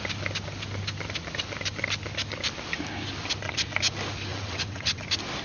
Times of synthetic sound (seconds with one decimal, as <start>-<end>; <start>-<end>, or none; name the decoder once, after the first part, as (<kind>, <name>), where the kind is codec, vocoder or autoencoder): 4.3-5.0 (vocoder, WaveNeXt)